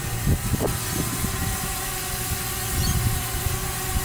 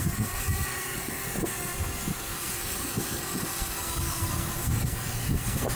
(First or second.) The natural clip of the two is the first